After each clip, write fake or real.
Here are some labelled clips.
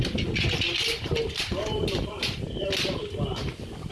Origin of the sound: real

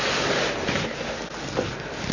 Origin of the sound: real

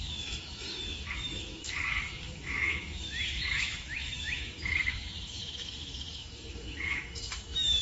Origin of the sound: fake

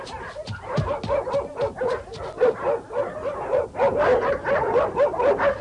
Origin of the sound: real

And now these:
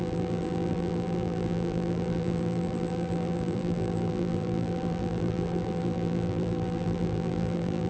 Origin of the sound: fake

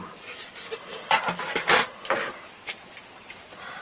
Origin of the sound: fake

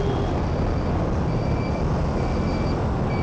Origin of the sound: real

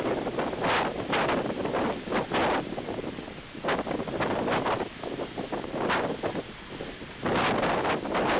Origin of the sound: real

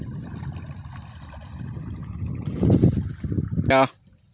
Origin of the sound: real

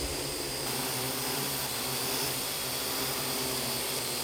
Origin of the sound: fake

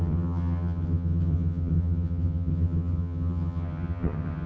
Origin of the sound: fake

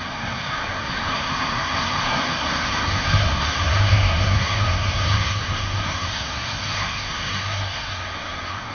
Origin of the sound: fake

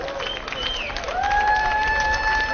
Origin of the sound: real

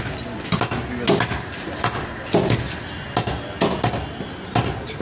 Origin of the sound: real